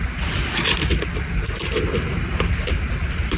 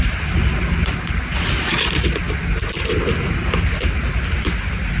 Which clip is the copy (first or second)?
first